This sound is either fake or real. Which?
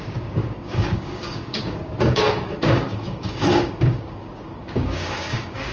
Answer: fake